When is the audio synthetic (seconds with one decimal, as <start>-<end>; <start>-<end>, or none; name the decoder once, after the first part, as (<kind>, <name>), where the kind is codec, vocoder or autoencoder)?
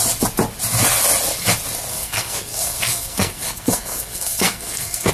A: 1.9-5.1 (codec, SNAC)